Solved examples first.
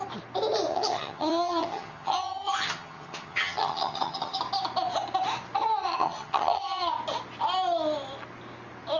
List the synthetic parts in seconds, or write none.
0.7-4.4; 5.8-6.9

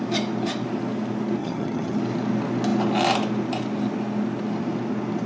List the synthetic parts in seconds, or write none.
1.4-2.0

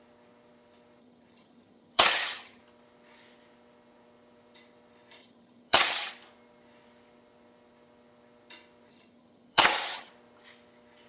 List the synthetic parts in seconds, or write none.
1.0-2.6; 5.2-6.1; 8.9-10.1